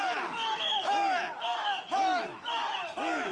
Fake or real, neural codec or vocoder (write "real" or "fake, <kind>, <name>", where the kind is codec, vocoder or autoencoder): fake, autoencoder, DAC-VAE